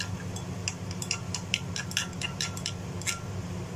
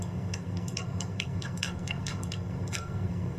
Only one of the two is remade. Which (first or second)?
second